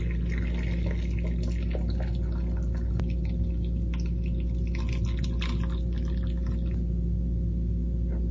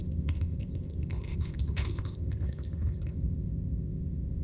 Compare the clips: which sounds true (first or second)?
first